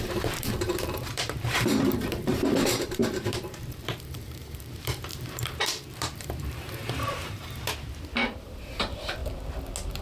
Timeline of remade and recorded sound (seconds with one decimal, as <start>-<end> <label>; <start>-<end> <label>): 0.0-9.2 remade; 9.2-10.0 recorded

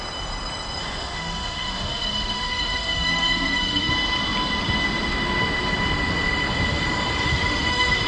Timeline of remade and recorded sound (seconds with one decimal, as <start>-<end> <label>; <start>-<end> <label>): 0.0-0.8 recorded; 0.8-3.9 remade; 3.9-7.3 recorded; 7.3-8.1 remade

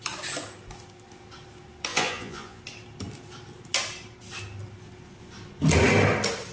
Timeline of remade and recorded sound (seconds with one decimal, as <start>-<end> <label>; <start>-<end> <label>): 0.0-1.9 recorded; 1.9-2.6 remade; 2.6-6.5 recorded

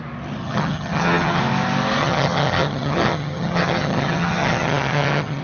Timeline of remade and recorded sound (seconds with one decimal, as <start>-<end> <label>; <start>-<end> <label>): 0.0-0.4 recorded; 0.4-1.4 remade; 1.4-2.0 recorded; 2.0-5.4 remade

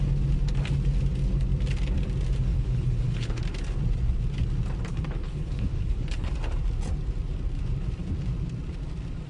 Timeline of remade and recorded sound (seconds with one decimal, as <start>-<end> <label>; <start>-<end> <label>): 0.0-2.5 recorded; 2.5-3.4 remade; 3.4-4.9 recorded; 4.9-6.3 remade; 6.3-9.3 recorded

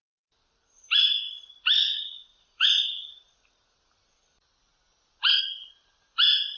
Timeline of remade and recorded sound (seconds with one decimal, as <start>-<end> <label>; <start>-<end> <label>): 0.0-6.6 recorded